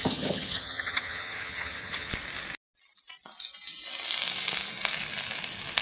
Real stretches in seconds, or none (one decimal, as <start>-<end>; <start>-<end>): 2.1-5.8